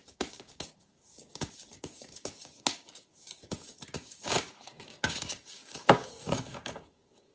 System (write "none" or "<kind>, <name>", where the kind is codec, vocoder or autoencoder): codec, DAC